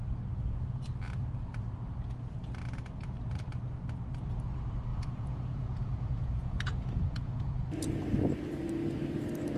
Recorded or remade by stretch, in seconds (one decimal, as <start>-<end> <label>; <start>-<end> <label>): 0.0-4.9 recorded; 4.9-7.5 remade; 7.5-9.6 recorded